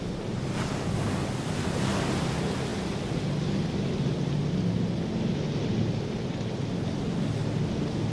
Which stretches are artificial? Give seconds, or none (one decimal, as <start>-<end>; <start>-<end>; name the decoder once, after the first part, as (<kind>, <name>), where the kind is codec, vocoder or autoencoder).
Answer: none

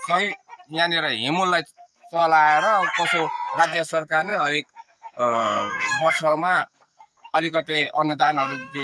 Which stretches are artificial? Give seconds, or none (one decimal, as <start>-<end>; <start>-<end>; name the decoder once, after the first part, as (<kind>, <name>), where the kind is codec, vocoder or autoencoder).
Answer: 0.0-0.4 (codec, SNAC); 1.7-2.2; 3.6-8.8

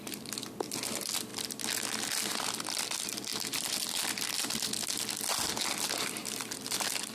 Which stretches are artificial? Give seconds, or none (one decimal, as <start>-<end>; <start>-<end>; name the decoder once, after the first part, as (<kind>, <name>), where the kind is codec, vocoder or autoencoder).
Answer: none

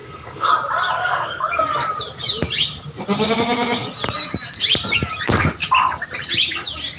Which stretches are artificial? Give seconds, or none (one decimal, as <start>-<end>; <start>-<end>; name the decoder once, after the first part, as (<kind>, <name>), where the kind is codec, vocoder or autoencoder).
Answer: 0.0-0.5 (codec, SNAC); 1.0-1.6

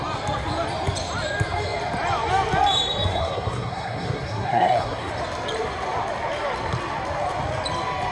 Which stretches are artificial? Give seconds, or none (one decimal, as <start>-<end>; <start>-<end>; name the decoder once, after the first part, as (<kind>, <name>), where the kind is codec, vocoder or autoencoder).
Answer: 3.1-5.1 (codec, SNAC)

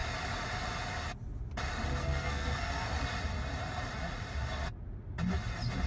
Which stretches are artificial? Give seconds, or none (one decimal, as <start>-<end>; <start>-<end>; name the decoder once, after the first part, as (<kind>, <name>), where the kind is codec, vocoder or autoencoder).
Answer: 2.0-3.0 (codec, SNAC)

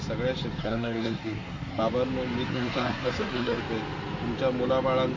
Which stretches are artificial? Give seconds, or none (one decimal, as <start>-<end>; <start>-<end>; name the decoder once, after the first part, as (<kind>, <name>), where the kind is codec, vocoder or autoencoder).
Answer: 0.6-1.8 (codec, SNAC); 2.5-3.6